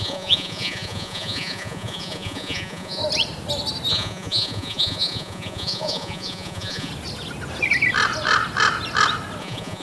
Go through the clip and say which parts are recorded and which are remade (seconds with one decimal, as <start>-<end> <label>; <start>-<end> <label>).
0.0-3.0 remade; 3.0-3.9 recorded; 3.9-6.9 remade; 6.9-9.4 recorded; 9.4-9.8 remade